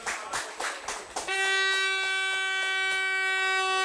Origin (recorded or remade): recorded